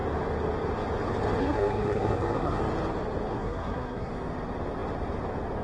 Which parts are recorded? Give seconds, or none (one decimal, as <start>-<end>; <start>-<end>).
0.0-1.4; 2.6-3.3; 4.1-5.6